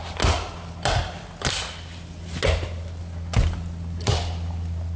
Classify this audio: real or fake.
real